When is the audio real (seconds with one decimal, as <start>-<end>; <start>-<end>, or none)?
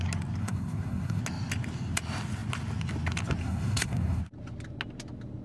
0.0-0.4; 1.2-3.4; 4.2-5.4